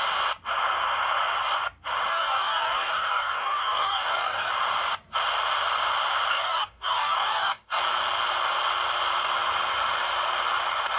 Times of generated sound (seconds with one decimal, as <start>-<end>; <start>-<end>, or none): 2.1-4.5; 6.3-7.8